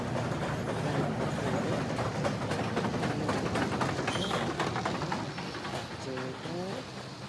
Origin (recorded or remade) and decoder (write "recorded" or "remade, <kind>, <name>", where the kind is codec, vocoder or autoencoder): recorded